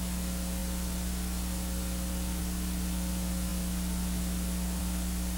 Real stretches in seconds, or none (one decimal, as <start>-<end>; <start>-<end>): 0.0-5.4